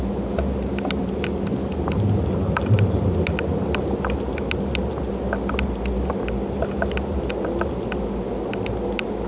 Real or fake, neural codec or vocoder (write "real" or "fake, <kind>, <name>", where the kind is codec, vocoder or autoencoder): real